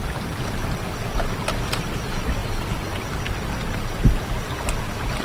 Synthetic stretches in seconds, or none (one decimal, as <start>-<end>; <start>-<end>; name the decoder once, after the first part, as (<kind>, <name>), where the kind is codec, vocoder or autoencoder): none